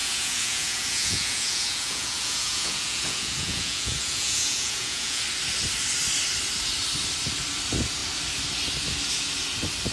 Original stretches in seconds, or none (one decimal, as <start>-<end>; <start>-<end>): 5.2-9.9